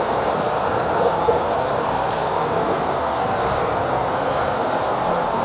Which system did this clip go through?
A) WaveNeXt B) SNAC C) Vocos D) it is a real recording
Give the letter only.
B